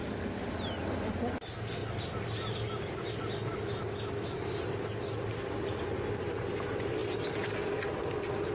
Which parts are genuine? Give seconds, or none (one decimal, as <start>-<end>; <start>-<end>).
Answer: 0.0-8.5